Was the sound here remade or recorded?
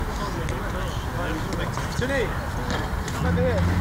recorded